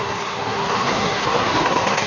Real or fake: fake